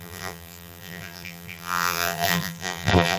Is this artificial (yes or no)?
yes